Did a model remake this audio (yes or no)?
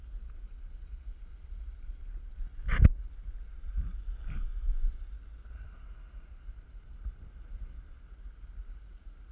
no